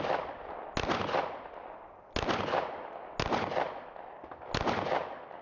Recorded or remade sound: recorded